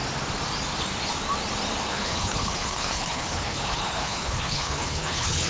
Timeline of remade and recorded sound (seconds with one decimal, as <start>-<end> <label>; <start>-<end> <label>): 0.0-1.9 recorded; 1.9-5.5 remade